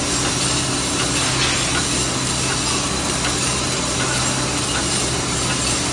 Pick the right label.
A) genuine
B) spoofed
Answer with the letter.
A